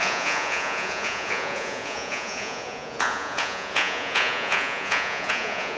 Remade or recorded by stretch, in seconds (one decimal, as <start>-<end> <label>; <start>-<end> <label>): 0.0-5.8 remade